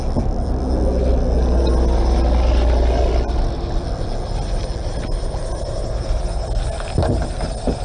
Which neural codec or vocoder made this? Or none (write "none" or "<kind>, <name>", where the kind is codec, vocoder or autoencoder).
none